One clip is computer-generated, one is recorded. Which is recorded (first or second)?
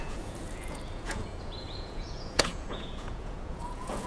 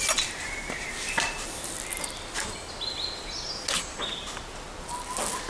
second